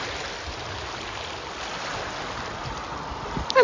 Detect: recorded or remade recorded